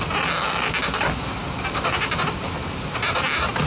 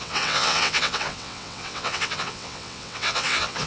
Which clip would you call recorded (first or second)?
first